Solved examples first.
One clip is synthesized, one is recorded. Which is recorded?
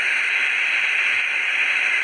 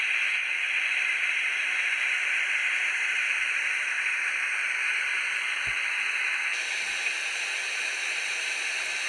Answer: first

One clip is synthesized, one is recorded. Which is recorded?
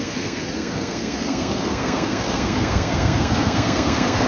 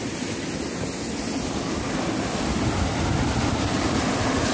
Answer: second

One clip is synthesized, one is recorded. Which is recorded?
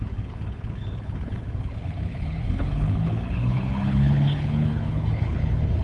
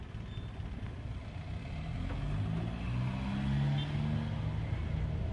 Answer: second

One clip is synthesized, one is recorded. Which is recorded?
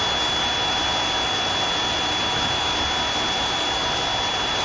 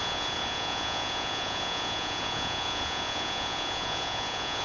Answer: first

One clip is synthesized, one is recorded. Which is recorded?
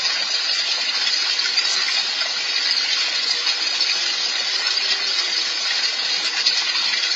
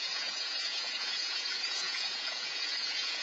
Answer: first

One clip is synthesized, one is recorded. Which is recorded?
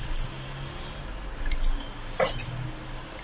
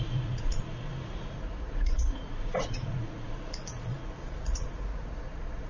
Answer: first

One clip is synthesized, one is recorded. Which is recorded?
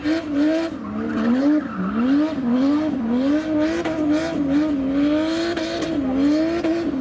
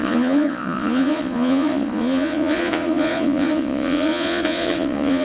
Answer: first